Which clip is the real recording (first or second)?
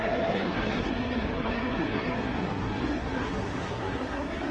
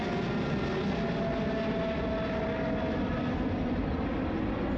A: second